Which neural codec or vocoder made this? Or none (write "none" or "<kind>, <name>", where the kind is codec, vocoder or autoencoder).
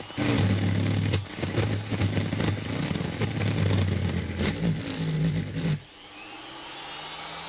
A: none